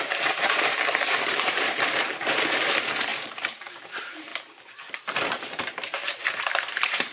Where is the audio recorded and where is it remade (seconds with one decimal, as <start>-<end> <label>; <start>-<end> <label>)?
0.0-4.3 remade; 4.3-5.4 recorded; 5.4-7.1 remade